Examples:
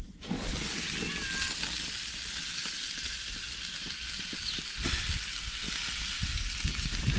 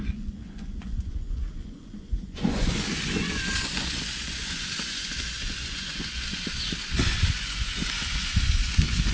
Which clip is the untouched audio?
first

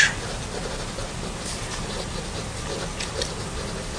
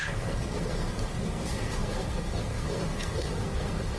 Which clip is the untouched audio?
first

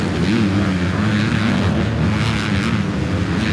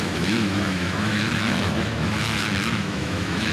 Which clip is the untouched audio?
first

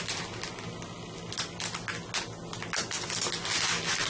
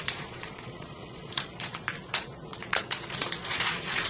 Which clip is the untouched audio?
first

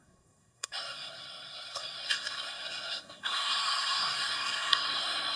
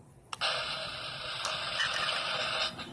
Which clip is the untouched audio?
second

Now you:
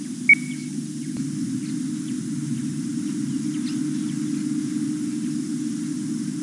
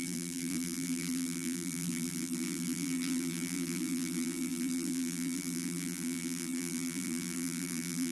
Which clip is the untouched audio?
first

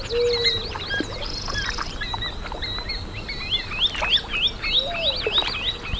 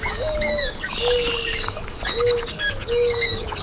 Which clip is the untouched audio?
first